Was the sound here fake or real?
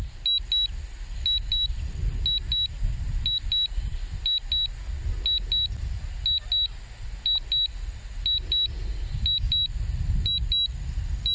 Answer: real